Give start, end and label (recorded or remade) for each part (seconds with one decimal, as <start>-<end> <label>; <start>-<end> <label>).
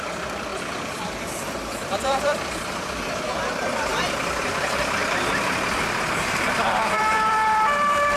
0.0-8.2 remade